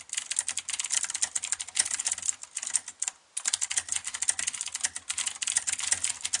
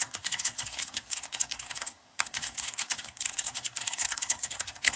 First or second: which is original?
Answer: first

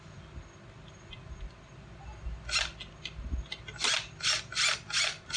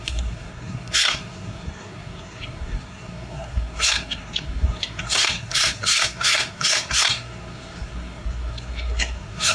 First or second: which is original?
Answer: first